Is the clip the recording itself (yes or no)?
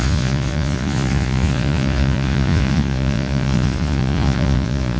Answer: no